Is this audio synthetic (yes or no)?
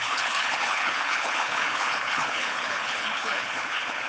yes